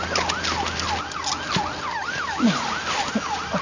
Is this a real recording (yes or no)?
yes